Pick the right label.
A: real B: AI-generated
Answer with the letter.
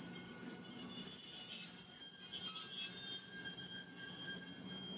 A